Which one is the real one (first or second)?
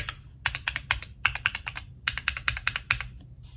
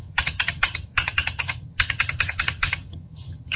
first